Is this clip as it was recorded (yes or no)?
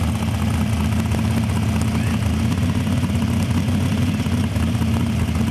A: yes